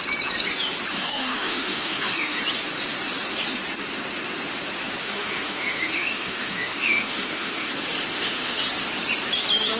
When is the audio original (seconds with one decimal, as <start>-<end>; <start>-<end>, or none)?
0.0-0.9; 2.4-5.0; 7.7-8.1; 8.6-9.8